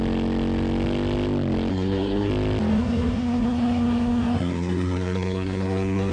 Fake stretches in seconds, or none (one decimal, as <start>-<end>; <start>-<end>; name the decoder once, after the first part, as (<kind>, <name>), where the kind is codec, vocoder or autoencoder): 1.7-2.3 (codec, SNAC); 2.7-6.1